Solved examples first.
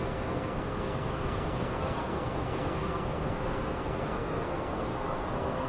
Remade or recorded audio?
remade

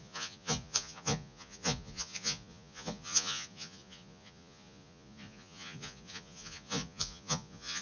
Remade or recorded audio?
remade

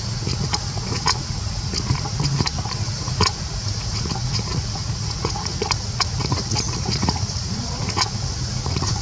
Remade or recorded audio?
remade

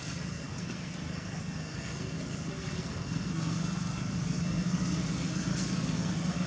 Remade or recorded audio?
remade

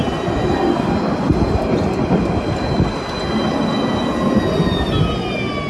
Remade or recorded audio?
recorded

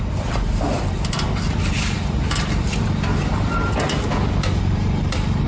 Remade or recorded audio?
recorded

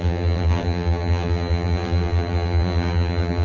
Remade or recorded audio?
remade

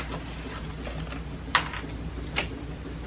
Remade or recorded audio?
recorded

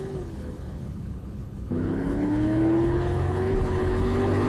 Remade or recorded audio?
remade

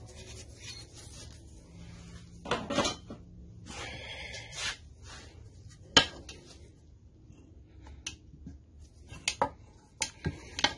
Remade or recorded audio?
recorded